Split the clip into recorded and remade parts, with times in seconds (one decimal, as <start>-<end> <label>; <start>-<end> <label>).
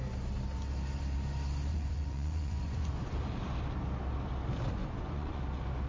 0.0-1.7 recorded; 1.7-3.1 remade; 3.1-4.8 recorded; 4.8-5.4 remade; 5.4-5.9 recorded